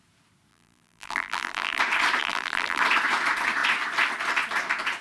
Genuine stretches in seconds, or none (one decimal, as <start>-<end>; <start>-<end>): 0.0-0.5; 1.8-2.2; 2.8-5.0